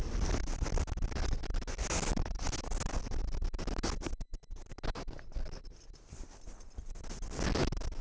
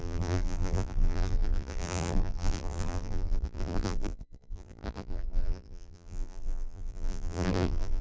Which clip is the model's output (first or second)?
second